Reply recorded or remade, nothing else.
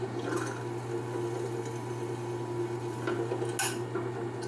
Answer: recorded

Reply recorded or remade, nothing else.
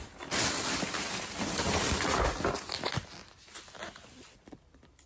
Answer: recorded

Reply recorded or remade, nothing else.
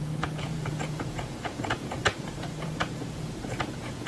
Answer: remade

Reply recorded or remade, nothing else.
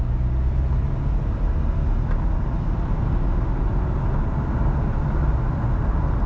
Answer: recorded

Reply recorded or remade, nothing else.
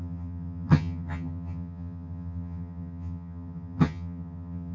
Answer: remade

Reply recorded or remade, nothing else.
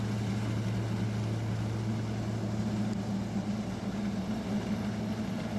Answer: recorded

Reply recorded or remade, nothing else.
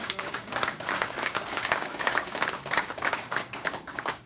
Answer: remade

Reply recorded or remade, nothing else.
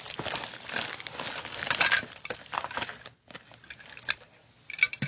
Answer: recorded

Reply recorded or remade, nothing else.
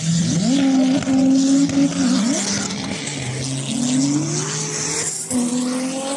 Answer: recorded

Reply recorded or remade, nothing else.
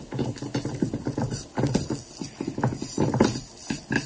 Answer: recorded